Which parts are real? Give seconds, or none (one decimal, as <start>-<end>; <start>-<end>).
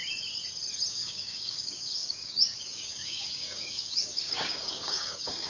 0.0-0.9